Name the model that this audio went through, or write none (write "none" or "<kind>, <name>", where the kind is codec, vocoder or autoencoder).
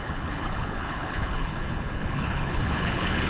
codec, HILCodec